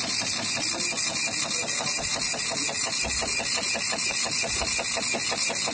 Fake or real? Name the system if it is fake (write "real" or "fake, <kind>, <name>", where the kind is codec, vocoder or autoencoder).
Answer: real